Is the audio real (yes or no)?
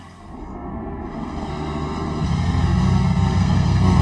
no